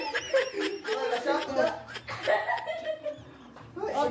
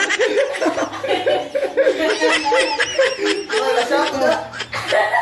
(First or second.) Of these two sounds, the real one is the second